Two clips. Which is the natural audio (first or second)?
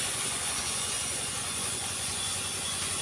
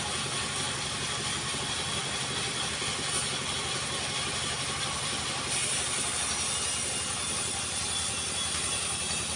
second